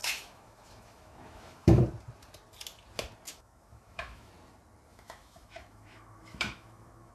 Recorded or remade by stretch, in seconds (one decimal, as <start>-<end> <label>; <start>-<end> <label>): 0.0-1.8 remade; 1.8-3.3 recorded; 3.3-4.3 remade; 4.3-4.9 recorded; 4.9-7.1 remade